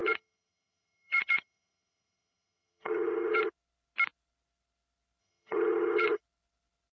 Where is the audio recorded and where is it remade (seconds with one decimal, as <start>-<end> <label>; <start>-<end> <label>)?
0.0-3.5 remade; 3.5-5.2 recorded; 5.2-6.2 remade; 6.2-7.0 recorded